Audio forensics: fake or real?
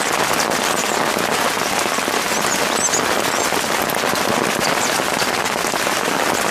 real